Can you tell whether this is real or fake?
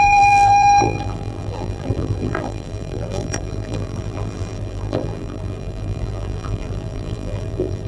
fake